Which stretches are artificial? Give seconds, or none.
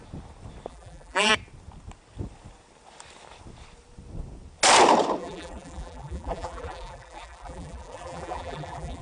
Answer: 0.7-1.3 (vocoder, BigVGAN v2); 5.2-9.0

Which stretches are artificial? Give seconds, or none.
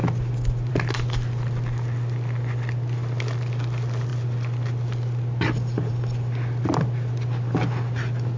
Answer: none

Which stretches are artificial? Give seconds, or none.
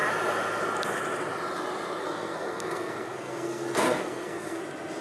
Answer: 2.0-4.6 (codec, SNAC)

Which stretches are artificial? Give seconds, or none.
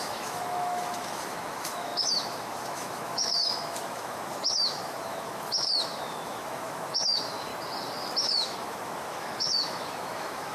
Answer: 0.0-7.5 (autoencoder, DAC-VAE); 8.2-10.5